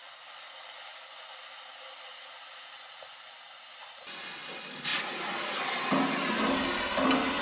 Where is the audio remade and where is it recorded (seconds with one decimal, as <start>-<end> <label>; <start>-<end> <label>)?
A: 0.0-7.4 recorded